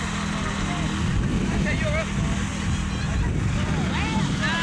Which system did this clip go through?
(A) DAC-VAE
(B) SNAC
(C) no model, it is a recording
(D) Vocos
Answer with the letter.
C